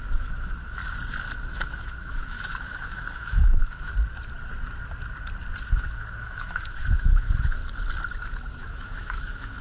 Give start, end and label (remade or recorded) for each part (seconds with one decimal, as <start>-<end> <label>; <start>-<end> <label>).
0.0-0.8 remade; 0.8-1.5 recorded; 1.5-3.9 remade; 3.9-5.7 recorded; 5.7-7.6 remade; 7.6-8.5 recorded; 8.5-9.6 remade